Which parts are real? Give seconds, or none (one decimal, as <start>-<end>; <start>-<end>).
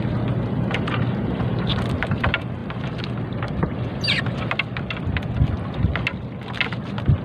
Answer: 0.0-7.2